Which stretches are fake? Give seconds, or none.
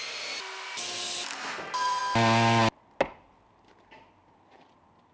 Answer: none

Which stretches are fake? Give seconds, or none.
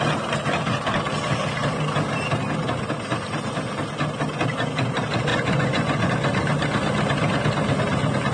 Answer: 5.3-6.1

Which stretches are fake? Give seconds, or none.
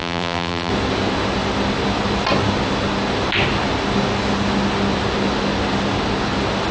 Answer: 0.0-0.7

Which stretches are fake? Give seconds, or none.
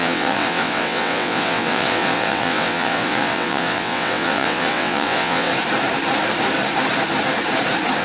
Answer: 0.0-5.5